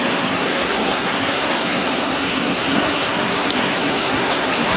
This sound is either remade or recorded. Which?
remade